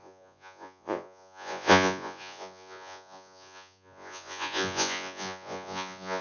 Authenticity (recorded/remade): remade